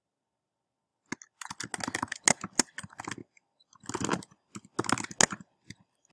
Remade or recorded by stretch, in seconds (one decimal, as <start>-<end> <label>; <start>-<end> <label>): 0.0-6.1 recorded